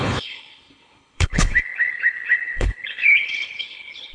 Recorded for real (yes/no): no